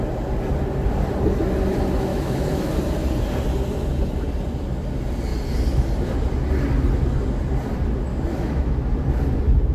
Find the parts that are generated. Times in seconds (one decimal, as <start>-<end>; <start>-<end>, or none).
2.1-2.7; 8.1-8.9